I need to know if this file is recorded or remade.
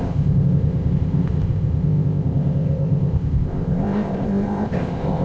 remade